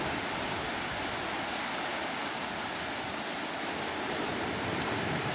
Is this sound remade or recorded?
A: recorded